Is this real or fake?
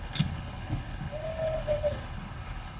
fake